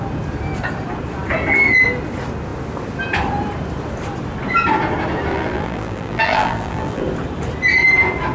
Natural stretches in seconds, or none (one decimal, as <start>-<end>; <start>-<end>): 0.0-5.3; 7.0-8.3